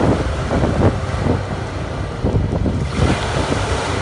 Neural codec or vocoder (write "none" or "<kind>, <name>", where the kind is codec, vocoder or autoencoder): vocoder, BigVGAN v2